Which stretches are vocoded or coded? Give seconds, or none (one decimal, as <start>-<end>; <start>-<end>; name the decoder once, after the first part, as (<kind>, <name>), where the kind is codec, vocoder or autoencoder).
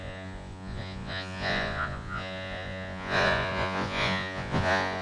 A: 0.0-5.0 (vocoder, Vocos)